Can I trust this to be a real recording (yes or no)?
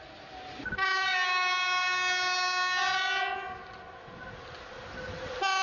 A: yes